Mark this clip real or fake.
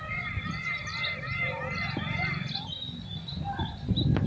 real